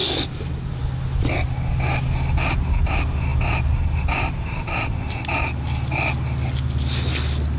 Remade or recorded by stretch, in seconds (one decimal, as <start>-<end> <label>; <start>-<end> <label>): 0.0-0.8 remade; 0.8-7.6 recorded

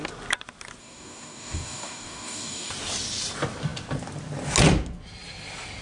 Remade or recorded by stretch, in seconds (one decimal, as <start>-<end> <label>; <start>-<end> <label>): 0.0-0.8 recorded; 0.8-2.7 remade; 2.7-5.8 recorded

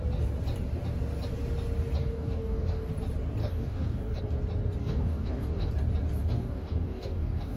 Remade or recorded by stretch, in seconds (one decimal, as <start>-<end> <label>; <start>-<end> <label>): 0.0-2.0 recorded; 2.0-2.9 remade; 2.9-3.4 recorded; 3.4-4.2 remade; 4.2-4.8 recorded; 4.8-5.7 remade; 5.7-6.2 recorded; 6.2-7.6 remade

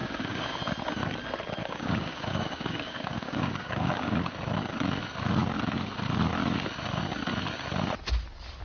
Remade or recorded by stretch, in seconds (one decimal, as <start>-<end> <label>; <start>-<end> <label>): 0.0-0.6 remade; 0.6-1.6 recorded; 1.6-4.3 remade; 4.3-8.6 recorded

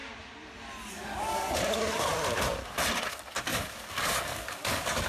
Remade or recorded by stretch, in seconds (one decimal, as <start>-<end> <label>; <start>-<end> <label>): 0.0-0.9 recorded; 0.9-2.1 remade; 2.1-3.1 recorded; 3.1-5.1 remade

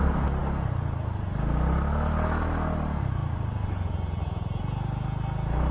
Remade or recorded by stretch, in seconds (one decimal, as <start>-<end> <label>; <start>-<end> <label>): 0.0-5.7 recorded

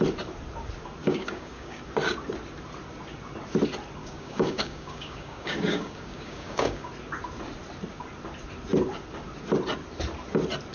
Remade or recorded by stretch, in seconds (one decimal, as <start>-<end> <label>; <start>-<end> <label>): 0.0-1.0 recorded; 1.0-1.8 remade; 1.8-4.0 recorded; 4.0-6.9 remade; 6.9-10.7 recorded

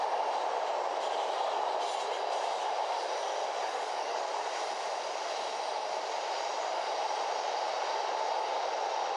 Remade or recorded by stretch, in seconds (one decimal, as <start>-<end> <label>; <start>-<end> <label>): 0.0-3.4 recorded; 3.4-4.2 remade; 4.2-9.2 recorded